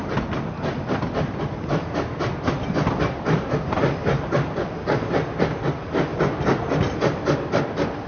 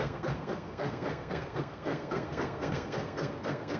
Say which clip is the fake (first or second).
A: second